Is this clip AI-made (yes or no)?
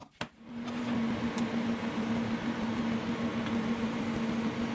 no